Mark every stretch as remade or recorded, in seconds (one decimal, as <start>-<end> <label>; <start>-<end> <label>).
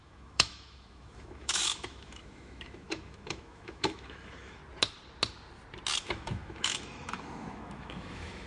0.0-4.6 remade; 4.6-6.0 recorded; 6.0-8.5 remade